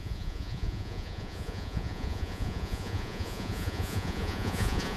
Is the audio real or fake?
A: fake